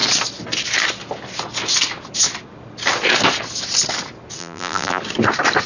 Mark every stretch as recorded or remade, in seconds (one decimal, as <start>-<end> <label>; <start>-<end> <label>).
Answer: 0.0-4.4 recorded; 4.4-5.0 remade; 5.0-5.7 recorded

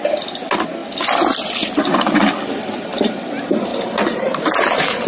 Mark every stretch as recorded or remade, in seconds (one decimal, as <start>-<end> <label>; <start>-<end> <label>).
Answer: 0.0-3.7 recorded; 3.7-5.1 remade

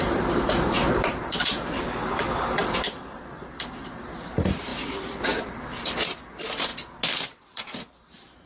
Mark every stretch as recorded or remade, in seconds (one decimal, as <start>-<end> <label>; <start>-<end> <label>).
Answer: 0.0-6.7 remade; 6.7-7.3 recorded; 7.3-8.5 remade